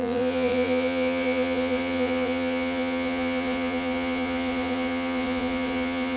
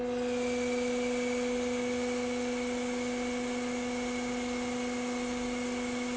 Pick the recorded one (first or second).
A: second